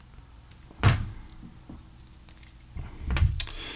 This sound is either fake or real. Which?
real